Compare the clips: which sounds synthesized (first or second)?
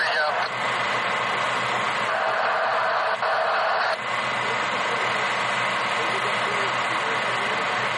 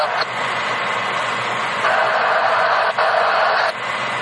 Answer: second